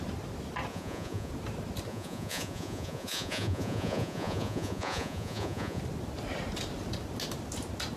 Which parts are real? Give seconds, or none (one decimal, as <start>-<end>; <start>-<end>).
0.0-0.7; 1.3-1.9; 5.8-8.0